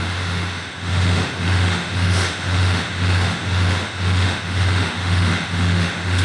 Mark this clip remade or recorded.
remade